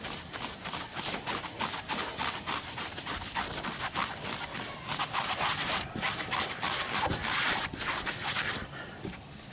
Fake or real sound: fake